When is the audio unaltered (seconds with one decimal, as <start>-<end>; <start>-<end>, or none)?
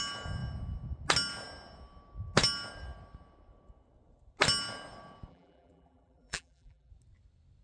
0.0-5.3; 6.9-7.6